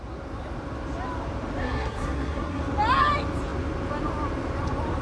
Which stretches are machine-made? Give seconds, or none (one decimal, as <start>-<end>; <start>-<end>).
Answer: 1.6-2.6